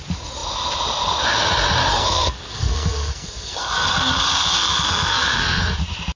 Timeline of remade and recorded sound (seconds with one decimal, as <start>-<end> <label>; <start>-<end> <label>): 0.0-1.9 recorded; 1.9-5.6 remade; 5.6-6.2 recorded